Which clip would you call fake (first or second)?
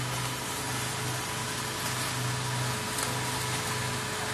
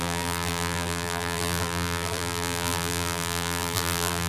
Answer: second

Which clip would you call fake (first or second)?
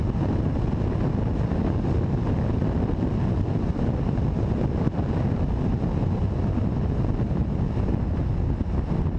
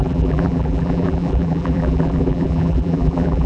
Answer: second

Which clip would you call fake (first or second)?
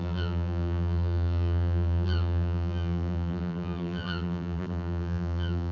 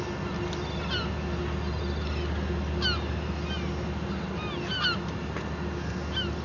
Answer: first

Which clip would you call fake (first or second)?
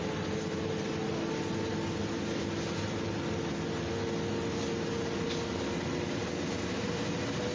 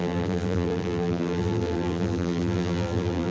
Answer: second